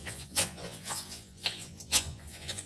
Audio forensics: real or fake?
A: fake